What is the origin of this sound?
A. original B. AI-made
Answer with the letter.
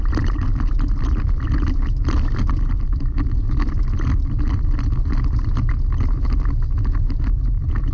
A